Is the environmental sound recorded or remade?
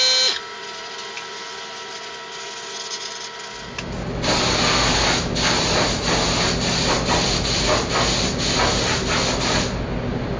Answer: recorded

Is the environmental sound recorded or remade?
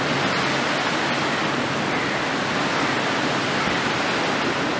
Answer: recorded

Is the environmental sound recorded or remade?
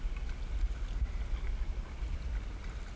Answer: recorded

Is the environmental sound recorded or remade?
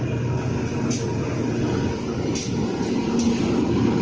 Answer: recorded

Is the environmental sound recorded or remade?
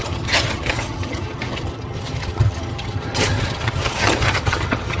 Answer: remade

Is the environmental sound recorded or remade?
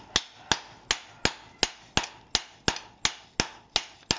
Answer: recorded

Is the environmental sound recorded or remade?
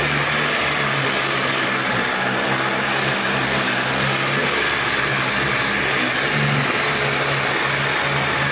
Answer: recorded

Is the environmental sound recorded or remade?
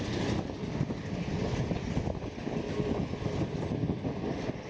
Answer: recorded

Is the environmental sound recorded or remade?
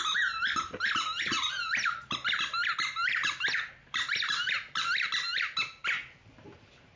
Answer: recorded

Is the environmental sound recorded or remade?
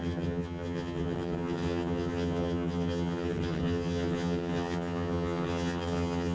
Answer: remade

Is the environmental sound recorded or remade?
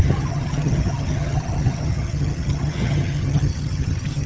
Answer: remade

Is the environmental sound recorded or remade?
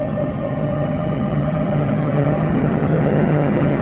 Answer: remade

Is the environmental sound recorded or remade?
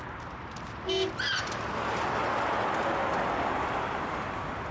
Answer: recorded